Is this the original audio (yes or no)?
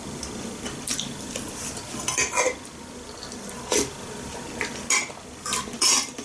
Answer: yes